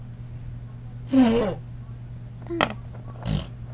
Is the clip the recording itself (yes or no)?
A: yes